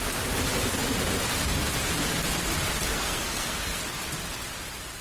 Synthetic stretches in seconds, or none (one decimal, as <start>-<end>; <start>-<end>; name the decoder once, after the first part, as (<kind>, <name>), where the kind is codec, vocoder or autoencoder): 2.9-3.8 (codec, SNAC)